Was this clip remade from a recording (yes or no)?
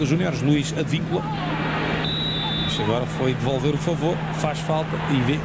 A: no